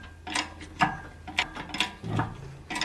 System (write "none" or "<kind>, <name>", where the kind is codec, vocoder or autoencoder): none